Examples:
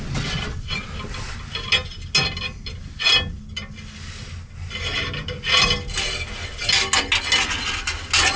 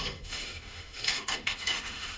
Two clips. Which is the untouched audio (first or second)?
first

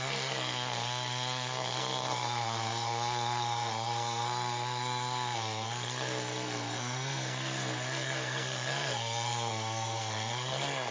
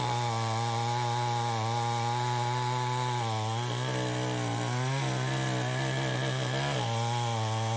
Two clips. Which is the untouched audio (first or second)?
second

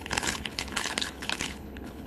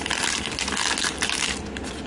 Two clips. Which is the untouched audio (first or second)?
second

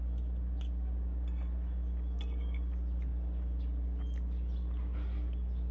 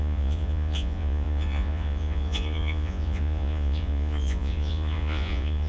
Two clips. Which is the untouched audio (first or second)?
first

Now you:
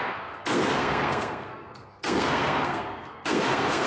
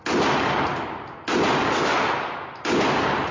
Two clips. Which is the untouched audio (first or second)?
second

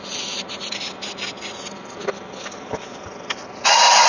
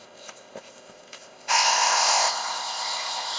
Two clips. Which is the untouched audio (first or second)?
first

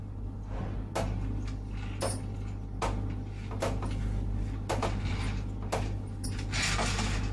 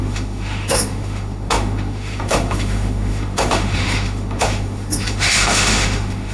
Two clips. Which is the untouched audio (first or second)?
first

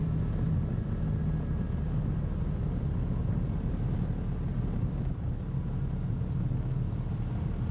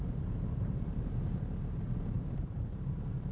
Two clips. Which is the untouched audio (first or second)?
first